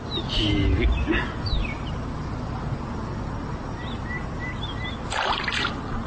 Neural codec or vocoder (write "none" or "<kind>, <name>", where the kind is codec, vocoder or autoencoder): none